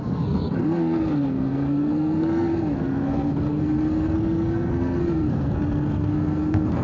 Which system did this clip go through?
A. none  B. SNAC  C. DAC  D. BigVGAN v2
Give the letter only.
B